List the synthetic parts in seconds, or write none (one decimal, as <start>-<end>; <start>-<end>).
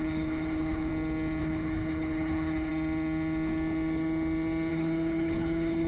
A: 0.0-0.9; 1.4-2.7; 4.7-5.9